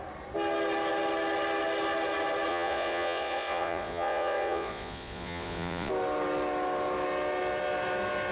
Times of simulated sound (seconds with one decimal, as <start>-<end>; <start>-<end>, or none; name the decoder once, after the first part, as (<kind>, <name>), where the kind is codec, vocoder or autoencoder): 2.5-5.9 (vocoder, Vocos)

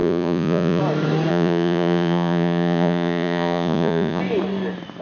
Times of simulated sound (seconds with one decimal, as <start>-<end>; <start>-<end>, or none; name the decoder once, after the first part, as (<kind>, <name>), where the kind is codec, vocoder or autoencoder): 0.0-0.8 (vocoder, Vocos); 1.3-4.2

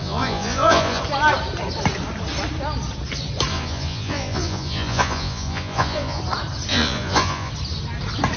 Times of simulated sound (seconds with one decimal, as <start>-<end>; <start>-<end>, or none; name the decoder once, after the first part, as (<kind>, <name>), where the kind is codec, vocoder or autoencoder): 0.0-1.0 (vocoder, Vocos); 3.5-6.2; 6.7-7.5

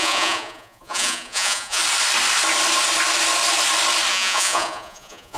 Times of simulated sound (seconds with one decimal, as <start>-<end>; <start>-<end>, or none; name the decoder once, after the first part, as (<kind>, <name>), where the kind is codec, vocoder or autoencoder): 0.0-1.8 (vocoder, Vocos); 4.1-5.4

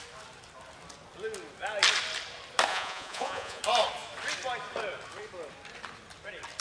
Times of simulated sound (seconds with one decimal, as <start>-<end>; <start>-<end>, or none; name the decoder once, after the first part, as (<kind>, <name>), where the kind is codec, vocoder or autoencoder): 2.7-3.6 (vocoder, Vocos)

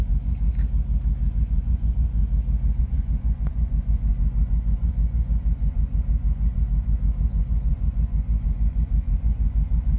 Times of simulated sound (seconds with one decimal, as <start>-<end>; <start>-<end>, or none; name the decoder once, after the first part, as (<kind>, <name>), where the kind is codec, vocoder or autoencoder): 0.0-0.5 (vocoder, Vocos); 1.3-2.2; 2.8-10.0